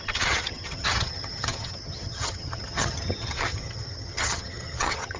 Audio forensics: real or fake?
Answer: fake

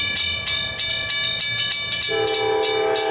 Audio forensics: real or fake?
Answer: real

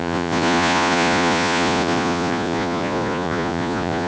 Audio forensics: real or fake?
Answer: fake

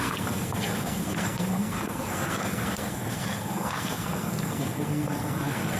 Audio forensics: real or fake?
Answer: fake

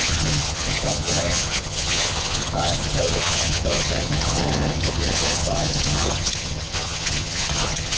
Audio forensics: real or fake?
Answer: fake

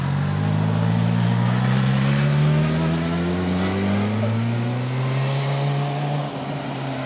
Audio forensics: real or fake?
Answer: real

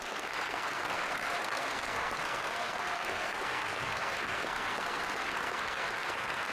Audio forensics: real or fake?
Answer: fake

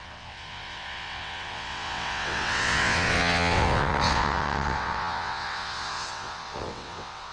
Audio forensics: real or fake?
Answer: fake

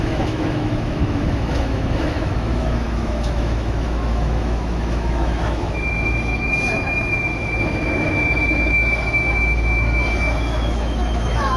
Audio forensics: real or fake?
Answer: fake